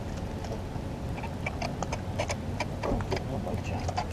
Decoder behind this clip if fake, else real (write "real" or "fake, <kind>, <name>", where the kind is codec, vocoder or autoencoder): real